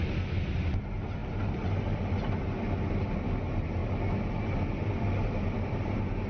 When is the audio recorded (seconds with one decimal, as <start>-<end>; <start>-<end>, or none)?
0.0-6.3